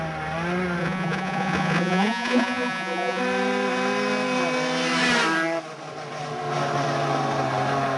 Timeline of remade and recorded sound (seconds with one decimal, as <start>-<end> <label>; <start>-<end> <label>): 0.0-0.8 recorded; 0.8-3.2 remade; 3.2-8.0 recorded